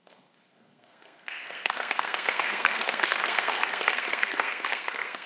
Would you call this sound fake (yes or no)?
yes